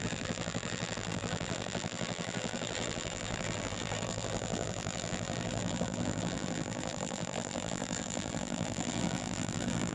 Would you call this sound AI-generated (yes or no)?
yes